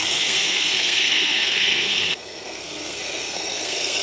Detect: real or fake fake